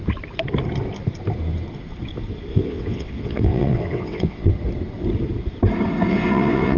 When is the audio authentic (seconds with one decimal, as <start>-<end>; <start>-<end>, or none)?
0.0-2.5; 4.5-6.1